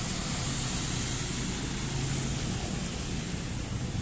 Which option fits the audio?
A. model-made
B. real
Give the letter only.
B